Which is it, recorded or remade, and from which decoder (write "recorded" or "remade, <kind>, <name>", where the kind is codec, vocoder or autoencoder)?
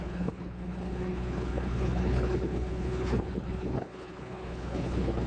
remade, codec, HILCodec